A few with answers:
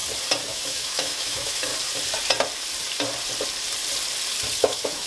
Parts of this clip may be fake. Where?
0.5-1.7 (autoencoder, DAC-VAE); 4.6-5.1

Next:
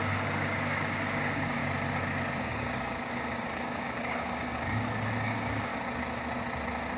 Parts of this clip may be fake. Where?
0.0-1.6 (codec, DAC); 2.4-5.7

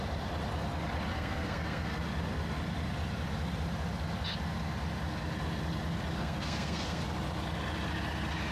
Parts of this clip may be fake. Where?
1.1-2.0 (codec, SNAC); 6.2-7.0

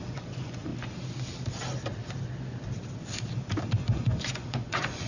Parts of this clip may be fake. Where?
0.0-0.7 (vocoder, Vocos); 3.8-5.1

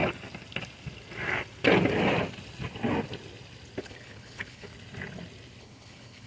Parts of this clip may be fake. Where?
3.8-4.7 (codec, HILCodec); 5.6-6.3